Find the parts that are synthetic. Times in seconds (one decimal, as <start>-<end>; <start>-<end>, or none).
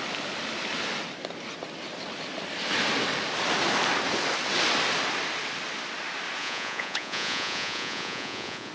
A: 6.4-8.7